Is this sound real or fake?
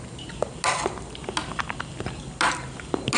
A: real